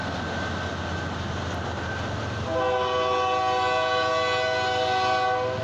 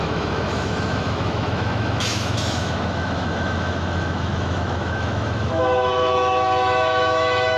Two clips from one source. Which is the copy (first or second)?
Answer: second